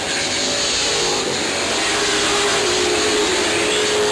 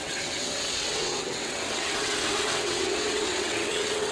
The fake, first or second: second